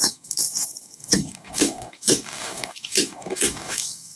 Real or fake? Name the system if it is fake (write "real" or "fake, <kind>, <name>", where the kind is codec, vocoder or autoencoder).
fake, codec, DAC